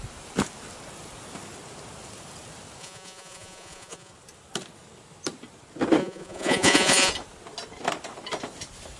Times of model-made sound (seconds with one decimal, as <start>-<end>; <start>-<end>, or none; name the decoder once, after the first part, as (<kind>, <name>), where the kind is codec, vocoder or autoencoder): 2.8-4.1 (vocoder, Vocos); 6.0-7.1